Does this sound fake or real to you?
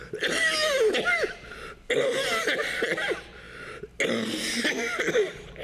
real